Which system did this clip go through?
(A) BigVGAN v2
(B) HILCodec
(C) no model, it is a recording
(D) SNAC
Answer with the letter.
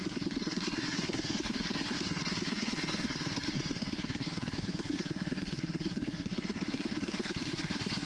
D